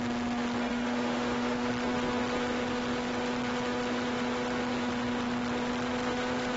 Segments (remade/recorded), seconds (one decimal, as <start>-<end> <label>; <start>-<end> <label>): 0.0-0.6 recorded; 0.6-1.7 remade; 1.7-6.6 recorded